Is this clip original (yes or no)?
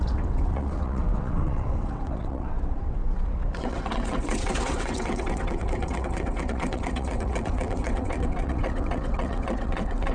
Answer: no